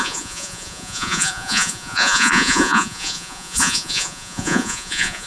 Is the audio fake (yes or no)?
yes